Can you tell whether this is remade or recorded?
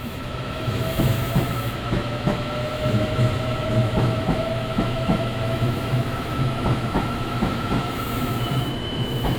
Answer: remade